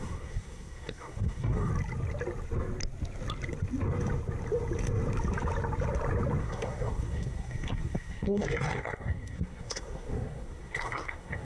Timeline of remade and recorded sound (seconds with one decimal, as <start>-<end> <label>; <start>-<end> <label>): 0.0-1.7 remade; 1.7-6.4 recorded; 6.4-11.4 remade